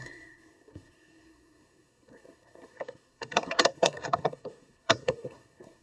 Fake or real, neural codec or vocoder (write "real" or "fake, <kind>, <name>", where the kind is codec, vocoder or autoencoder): fake, codec, SNAC